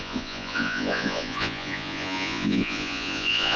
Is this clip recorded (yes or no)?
no